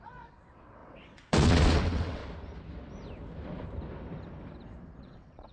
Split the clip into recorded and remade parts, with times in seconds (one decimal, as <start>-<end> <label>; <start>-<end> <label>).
0.0-2.2 remade; 2.2-5.0 recorded; 5.0-5.5 remade